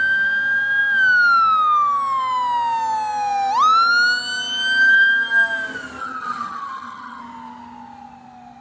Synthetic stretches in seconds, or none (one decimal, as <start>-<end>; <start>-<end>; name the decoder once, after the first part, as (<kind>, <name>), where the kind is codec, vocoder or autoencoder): 6.0-7.2 (vocoder, HiFi-GAN)